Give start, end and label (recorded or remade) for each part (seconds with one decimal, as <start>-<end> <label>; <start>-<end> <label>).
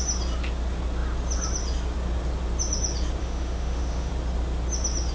0.0-3.2 recorded; 3.2-4.1 remade; 4.1-5.1 recorded